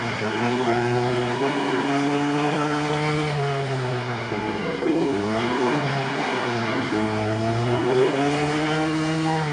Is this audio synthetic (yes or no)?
yes